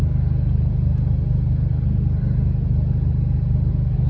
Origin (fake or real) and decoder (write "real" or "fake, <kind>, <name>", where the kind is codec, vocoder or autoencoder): real